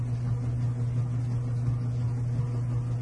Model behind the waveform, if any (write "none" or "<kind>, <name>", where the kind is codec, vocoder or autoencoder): none